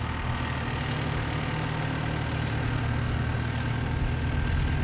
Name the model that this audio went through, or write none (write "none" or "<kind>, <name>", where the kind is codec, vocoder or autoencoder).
none